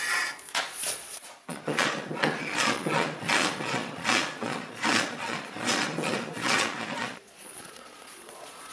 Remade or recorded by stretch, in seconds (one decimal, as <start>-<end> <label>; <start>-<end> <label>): 0.0-8.7 remade